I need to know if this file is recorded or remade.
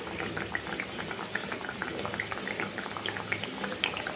recorded